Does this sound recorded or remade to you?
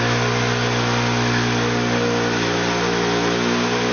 recorded